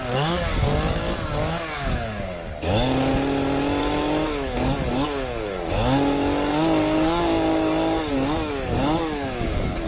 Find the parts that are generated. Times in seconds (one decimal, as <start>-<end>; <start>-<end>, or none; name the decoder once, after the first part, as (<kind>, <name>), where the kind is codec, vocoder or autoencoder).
0.0-3.1 (codec, DAC); 3.8-9.9